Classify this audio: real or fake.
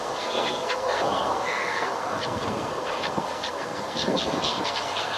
fake